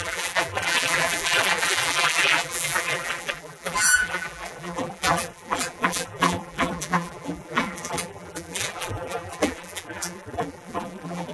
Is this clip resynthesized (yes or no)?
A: yes